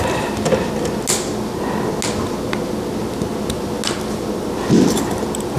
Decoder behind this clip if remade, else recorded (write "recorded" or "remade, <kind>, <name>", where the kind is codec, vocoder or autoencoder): recorded